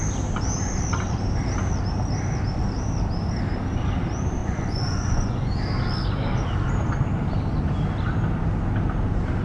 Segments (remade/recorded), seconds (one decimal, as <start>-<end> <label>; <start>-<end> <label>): 0.0-4.4 recorded; 4.4-5.5 remade; 5.5-9.4 recorded